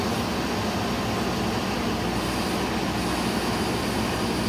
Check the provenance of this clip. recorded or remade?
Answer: recorded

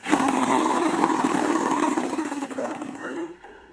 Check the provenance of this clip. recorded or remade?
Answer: remade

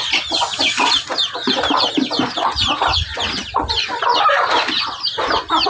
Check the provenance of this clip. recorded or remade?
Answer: recorded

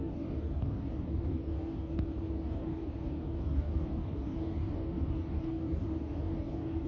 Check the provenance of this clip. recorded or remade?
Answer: remade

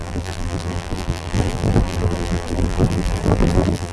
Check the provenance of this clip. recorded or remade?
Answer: remade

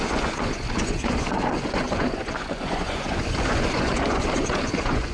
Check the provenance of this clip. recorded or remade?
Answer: remade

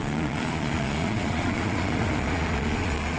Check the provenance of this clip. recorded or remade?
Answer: remade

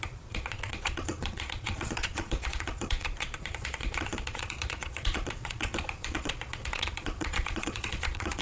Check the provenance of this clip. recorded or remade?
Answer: remade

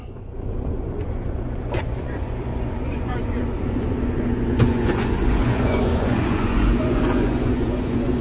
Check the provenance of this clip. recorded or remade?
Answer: remade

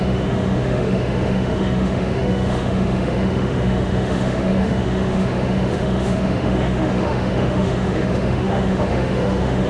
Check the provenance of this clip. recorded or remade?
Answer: remade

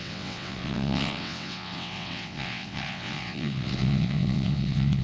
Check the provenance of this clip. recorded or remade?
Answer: remade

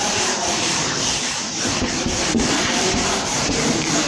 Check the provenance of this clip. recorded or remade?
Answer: remade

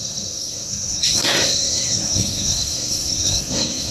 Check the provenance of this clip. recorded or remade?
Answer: remade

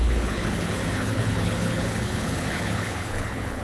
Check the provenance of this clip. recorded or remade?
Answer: remade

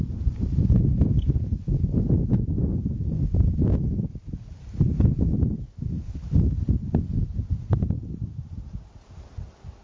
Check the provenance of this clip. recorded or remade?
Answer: recorded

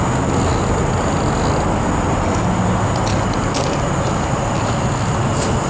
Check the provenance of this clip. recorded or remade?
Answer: recorded